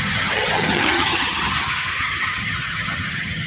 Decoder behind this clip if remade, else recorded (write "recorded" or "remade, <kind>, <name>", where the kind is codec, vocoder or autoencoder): remade, vocoder, HiFi-GAN